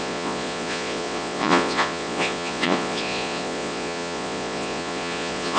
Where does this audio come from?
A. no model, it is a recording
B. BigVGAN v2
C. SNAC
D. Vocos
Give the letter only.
D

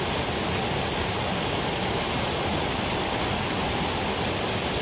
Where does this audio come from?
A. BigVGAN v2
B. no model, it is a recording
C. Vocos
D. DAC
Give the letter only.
B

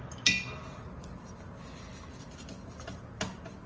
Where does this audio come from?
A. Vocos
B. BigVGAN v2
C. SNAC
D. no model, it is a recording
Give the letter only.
D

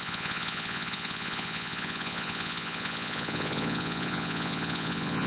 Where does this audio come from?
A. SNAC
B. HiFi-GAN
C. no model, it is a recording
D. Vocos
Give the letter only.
D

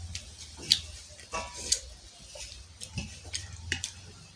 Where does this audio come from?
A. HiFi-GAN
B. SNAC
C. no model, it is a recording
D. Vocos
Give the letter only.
C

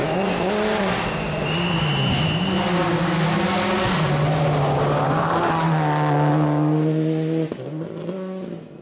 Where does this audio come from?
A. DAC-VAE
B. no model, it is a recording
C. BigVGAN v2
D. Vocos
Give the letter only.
B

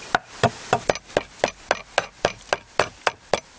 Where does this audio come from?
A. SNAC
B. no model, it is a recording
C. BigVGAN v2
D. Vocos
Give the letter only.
B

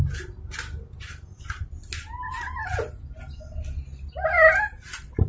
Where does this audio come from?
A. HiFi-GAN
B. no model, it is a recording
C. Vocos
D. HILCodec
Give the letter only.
B